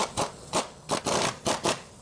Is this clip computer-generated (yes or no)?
no